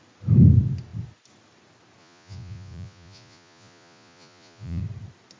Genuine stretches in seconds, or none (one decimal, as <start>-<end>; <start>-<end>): 0.0-2.0; 4.8-5.4